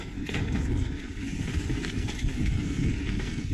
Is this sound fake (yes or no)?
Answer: yes